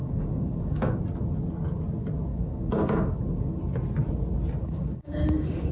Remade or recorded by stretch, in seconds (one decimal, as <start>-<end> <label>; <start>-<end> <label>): 0.0-1.0 remade; 1.0-2.3 recorded; 2.3-3.6 remade; 3.6-4.6 recorded; 4.6-5.7 remade